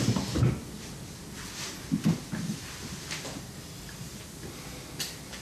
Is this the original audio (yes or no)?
yes